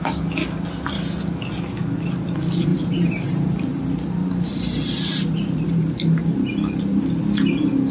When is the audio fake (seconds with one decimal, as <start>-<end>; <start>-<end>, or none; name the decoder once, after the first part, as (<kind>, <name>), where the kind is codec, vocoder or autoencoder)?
2.7-7.0 (vocoder, BigVGAN v2)